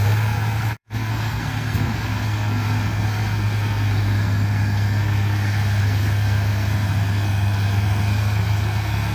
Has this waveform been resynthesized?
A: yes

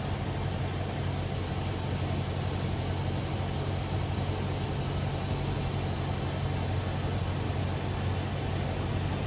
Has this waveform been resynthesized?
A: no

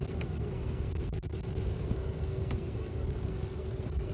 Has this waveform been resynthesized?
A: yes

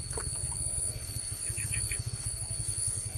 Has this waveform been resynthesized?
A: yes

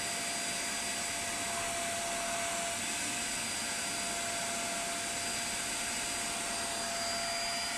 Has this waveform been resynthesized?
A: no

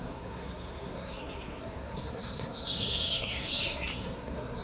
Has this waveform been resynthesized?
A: yes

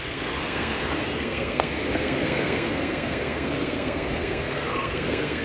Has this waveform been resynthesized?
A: yes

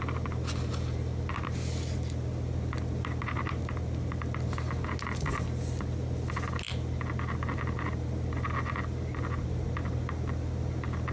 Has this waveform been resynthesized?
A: no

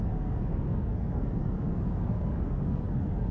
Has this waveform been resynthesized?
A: yes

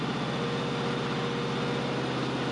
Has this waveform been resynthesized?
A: no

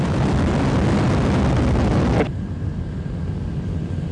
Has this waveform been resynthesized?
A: no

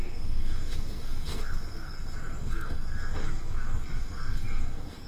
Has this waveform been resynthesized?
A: yes